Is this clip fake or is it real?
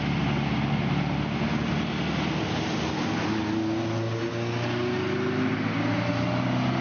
real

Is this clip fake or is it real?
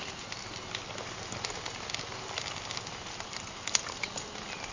real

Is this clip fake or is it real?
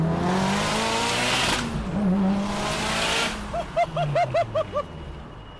real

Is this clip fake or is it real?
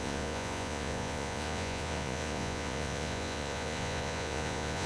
fake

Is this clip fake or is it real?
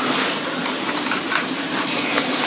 fake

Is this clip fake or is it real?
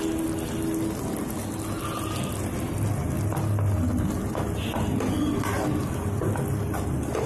real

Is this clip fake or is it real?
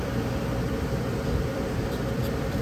fake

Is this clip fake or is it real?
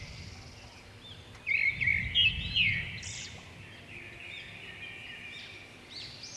real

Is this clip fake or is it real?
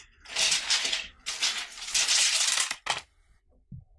real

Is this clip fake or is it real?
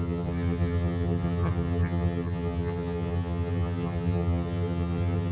fake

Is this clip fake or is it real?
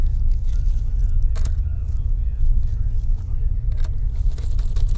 real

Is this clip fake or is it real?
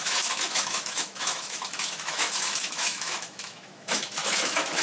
fake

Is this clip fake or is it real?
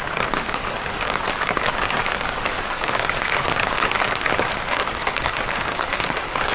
fake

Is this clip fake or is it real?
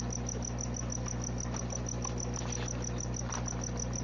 real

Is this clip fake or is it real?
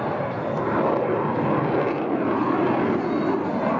real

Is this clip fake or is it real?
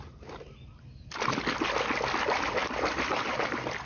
real